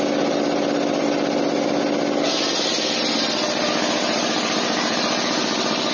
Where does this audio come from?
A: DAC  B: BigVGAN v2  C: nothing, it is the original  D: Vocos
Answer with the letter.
C